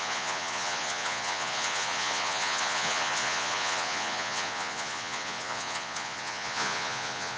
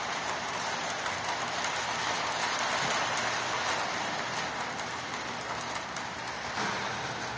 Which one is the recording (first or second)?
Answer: second